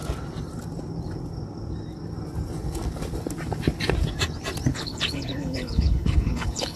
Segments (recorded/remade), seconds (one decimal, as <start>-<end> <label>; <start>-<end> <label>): 0.0-4.7 recorded; 4.7-6.8 remade